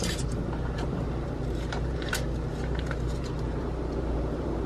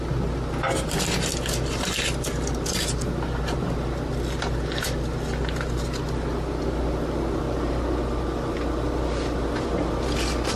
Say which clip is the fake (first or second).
first